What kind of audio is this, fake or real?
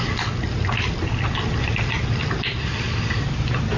real